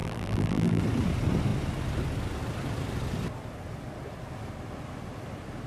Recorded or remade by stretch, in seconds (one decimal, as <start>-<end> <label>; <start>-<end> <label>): 0.0-0.8 remade; 0.8-5.7 recorded